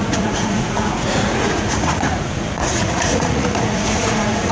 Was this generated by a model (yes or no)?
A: yes